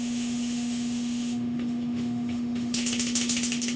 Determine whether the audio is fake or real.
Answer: fake